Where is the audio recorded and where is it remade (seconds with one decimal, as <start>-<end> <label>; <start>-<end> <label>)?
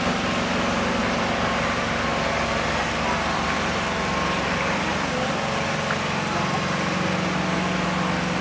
0.0-8.4 recorded